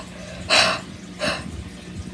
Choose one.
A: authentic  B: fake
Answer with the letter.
A